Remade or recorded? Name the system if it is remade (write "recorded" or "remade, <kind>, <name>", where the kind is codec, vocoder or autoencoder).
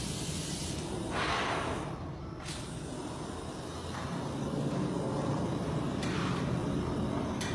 remade, vocoder, BigVGAN v2